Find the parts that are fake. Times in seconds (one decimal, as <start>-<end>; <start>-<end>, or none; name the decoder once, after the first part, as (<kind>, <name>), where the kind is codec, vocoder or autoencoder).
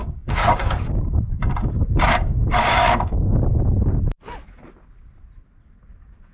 0.0-3.4 (codec, DAC)